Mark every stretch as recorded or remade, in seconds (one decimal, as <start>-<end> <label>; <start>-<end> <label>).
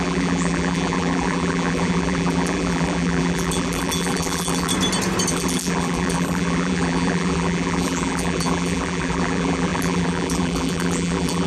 0.0-4.7 remade; 4.7-5.3 recorded; 5.3-11.5 remade